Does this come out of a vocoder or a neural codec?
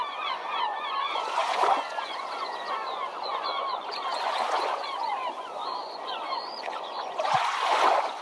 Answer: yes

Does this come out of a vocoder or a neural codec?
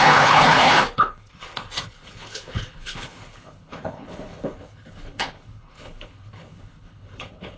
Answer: yes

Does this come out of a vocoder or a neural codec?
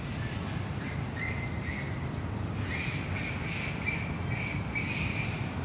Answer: no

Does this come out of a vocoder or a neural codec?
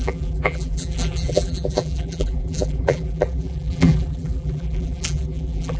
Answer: yes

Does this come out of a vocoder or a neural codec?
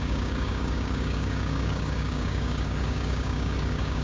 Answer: yes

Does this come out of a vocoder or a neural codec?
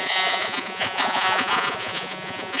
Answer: yes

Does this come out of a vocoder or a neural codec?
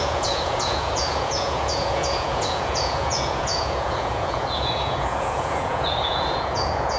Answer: yes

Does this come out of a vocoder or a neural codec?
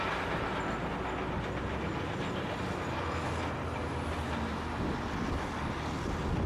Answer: no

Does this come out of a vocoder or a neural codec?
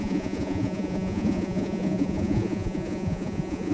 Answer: yes